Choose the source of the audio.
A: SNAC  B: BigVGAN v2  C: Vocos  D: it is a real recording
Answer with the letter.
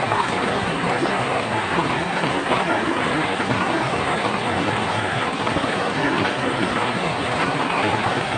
A